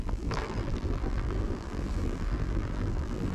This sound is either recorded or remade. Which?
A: remade